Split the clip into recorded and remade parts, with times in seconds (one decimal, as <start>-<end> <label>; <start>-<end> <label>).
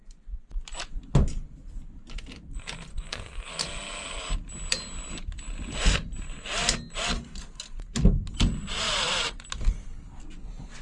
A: 0.0-2.9 recorded; 2.9-3.5 remade; 3.5-10.8 recorded